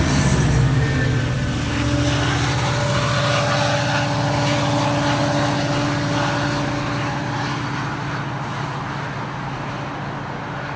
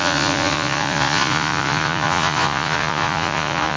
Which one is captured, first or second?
first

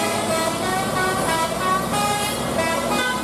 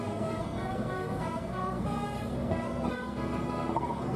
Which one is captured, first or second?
first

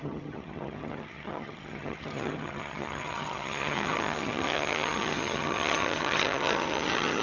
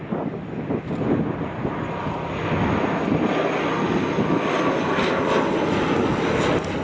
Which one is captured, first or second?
second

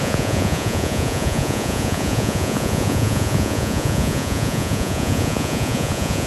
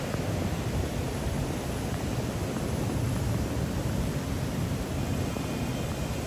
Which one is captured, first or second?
second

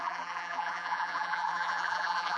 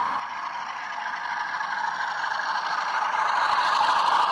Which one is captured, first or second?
second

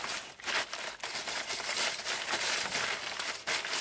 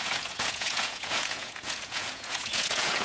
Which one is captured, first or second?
first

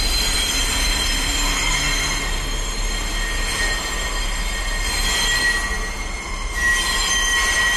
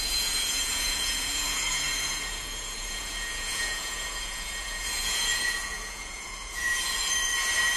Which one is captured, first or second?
first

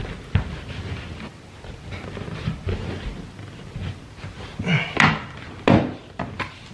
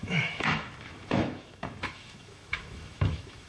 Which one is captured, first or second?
first